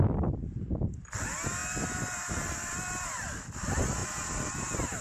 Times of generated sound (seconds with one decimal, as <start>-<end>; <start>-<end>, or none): none